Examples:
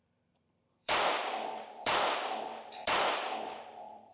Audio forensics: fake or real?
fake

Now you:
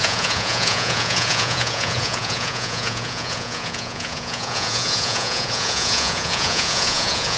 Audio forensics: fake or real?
fake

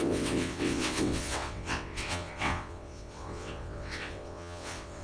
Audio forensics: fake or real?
fake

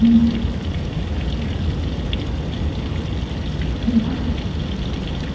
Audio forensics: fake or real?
real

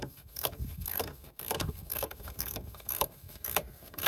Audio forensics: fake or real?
fake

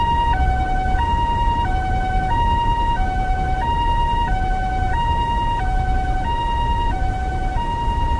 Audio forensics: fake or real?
real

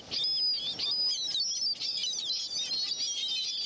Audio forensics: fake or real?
real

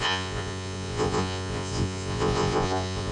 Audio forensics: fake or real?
fake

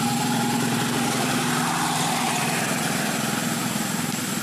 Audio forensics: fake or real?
real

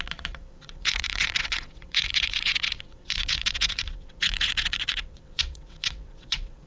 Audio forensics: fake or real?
fake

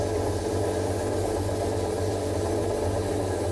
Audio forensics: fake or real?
real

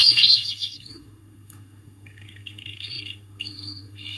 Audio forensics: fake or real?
fake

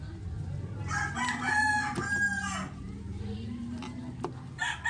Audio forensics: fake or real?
real